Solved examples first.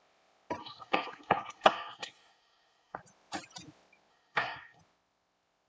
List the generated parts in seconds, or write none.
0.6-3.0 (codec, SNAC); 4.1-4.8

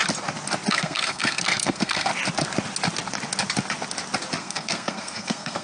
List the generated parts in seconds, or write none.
0.7-2.1 (codec, SNAC); 4.4-5.6